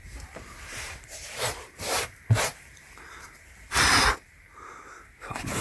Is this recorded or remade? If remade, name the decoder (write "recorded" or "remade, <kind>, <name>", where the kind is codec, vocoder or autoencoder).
remade, vocoder, BigVGAN v2